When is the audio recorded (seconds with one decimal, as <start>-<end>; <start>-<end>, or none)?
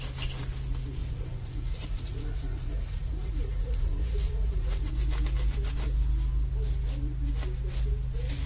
0.0-1.0; 4.9-8.5